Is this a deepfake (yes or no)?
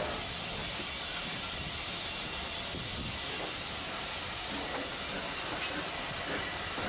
no